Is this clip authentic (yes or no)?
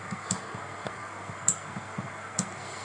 no